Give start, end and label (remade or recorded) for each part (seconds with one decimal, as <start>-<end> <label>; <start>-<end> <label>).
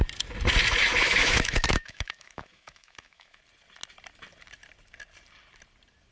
0.0-1.0 recorded; 1.0-3.4 remade; 3.4-6.1 recorded